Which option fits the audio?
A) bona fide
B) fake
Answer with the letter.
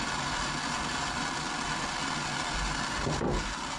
A